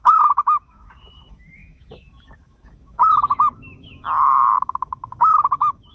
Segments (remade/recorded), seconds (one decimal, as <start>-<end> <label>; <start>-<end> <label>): 0.0-5.9 remade